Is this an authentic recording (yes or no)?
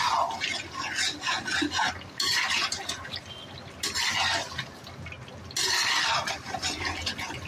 yes